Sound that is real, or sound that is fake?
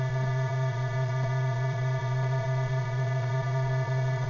fake